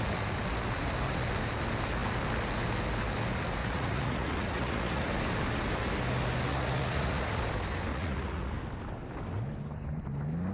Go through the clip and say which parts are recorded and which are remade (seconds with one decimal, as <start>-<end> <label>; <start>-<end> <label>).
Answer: 0.0-3.6 recorded; 3.6-5.1 remade; 5.1-6.5 recorded; 6.5-7.4 remade; 7.4-7.9 recorded; 7.9-8.5 remade; 8.5-10.5 recorded